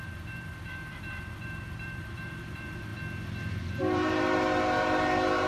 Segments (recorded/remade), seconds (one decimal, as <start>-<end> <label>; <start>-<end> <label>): 0.0-2.9 remade; 2.9-3.5 recorded; 3.5-5.5 remade